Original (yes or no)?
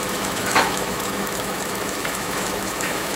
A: no